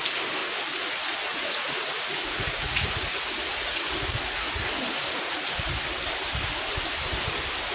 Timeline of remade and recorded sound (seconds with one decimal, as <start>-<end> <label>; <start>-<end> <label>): 0.0-1.3 recorded; 1.3-5.2 remade; 5.2-7.7 recorded